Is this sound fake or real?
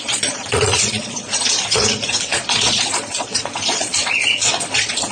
fake